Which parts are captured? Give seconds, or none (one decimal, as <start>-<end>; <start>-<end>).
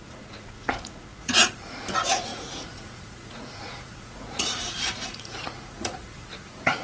none